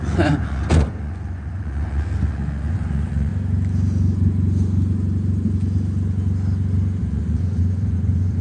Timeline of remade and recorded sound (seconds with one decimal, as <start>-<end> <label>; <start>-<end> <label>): 0.0-3.3 remade; 3.3-7.0 recorded; 7.0-8.4 remade